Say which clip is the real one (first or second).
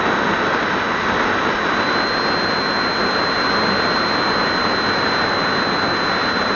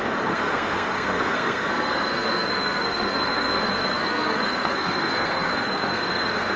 first